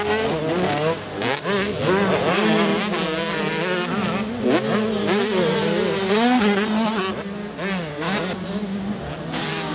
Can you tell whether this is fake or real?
real